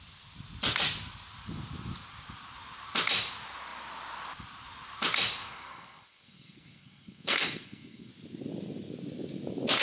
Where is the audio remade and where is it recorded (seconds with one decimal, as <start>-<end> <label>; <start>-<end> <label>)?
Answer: 0.0-5.4 recorded; 5.4-8.1 remade; 8.1-9.8 recorded